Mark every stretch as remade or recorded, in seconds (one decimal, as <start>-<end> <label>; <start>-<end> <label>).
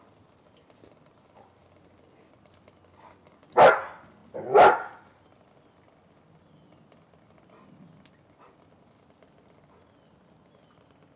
0.0-11.2 recorded